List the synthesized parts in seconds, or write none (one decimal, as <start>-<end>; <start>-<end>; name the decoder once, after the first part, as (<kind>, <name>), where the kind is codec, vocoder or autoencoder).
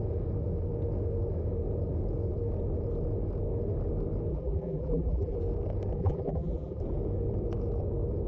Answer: 4.3-5.4 (vocoder, BigVGAN v2); 6.0-6.8